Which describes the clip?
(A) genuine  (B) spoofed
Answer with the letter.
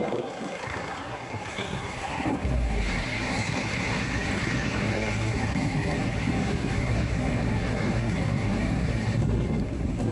B